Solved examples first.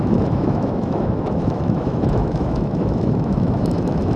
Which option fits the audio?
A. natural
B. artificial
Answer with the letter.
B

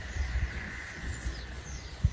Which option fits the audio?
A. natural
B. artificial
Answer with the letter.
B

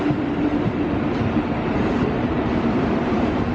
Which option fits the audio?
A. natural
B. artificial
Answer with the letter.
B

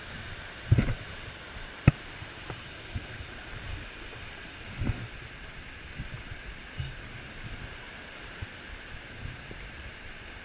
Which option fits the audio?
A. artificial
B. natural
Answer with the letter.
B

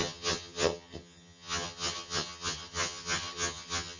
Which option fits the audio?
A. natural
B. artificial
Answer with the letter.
B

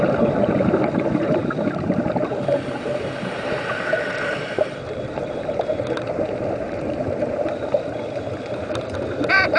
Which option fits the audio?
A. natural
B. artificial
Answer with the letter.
B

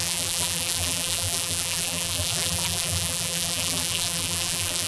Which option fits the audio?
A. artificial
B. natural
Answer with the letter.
A